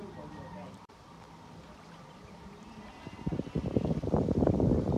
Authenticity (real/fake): fake